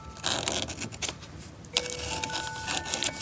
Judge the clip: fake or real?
real